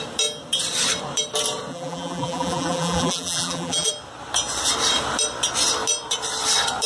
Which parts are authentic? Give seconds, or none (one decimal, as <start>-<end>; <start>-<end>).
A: 0.0-1.7; 3.9-6.9